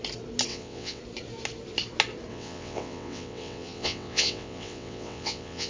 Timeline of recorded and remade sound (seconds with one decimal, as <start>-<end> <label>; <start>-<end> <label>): 0.0-0.5 recorded; 0.5-1.0 remade; 1.0-2.3 recorded; 2.3-5.7 remade